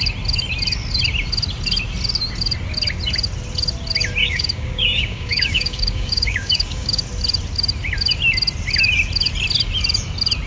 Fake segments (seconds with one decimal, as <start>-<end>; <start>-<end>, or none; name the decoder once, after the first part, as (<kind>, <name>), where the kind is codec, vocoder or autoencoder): 4.2-7.0 (codec, DAC)